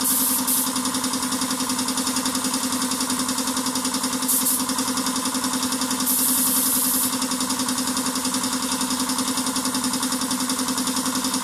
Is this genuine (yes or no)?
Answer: yes